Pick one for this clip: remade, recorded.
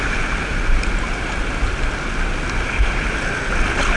recorded